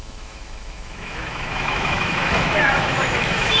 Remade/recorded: remade